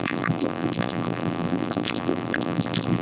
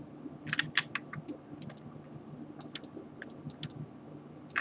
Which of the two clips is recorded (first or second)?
second